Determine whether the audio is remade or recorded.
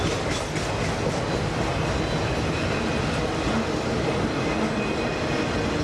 recorded